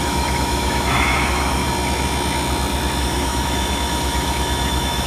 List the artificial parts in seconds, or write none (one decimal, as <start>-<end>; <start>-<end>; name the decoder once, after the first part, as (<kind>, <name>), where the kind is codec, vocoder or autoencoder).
0.0-1.6 (autoencoder, DAC-VAE); 3.0-5.1